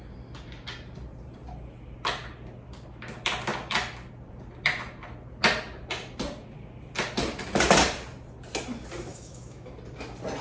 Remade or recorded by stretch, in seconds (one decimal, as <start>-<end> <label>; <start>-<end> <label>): 0.0-9.1 recorded; 9.1-9.7 remade; 9.7-10.4 recorded